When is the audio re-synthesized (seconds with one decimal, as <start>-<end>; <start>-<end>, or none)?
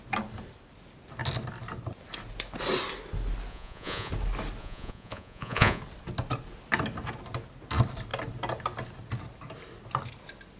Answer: 3.5-4.1; 4.6-5.8